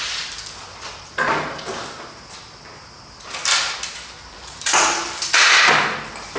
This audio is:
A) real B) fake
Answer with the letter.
A